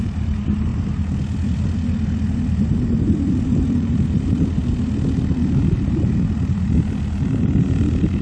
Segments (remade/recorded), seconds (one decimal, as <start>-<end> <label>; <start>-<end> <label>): 0.0-0.7 remade; 0.7-3.3 recorded; 3.3-4.6 remade; 4.6-8.2 recorded